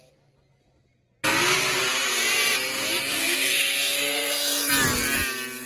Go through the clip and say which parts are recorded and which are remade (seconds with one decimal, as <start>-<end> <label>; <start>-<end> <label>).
0.0-3.2 recorded; 3.2-4.7 remade; 4.7-5.7 recorded